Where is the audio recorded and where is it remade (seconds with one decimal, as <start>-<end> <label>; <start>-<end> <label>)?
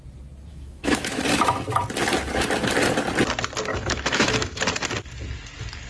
0.0-0.5 recorded; 0.5-1.2 remade; 1.2-3.7 recorded; 3.7-4.6 remade; 4.6-5.9 recorded